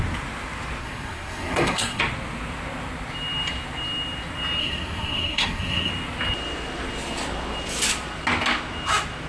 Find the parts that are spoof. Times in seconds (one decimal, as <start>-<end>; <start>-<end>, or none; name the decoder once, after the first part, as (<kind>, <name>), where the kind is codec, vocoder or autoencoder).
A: 0.8-2.0 (codec, SNAC); 4.6-5.9